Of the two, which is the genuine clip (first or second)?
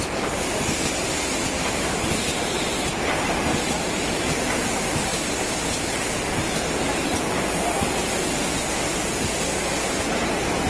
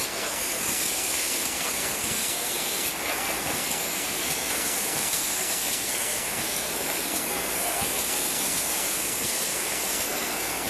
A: first